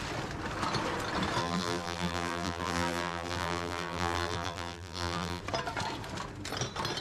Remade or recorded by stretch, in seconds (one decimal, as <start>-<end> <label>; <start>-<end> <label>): 0.0-1.4 recorded; 1.4-5.4 remade; 5.4-7.0 recorded